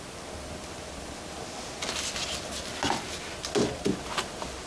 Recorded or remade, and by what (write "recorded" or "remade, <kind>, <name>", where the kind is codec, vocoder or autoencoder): recorded